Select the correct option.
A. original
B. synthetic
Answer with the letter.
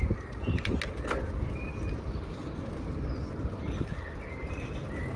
A